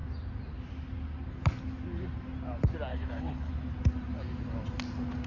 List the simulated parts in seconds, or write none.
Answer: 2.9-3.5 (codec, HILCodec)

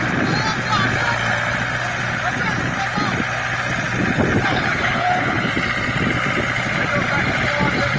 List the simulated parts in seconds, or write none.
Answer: 4.5-5.5 (codec, HILCodec)

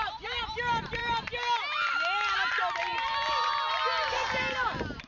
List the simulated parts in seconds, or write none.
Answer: none

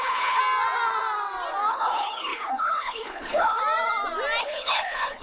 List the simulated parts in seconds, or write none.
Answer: 0.0-0.4 (codec, HILCodec); 1.7-3.6; 4.4-5.2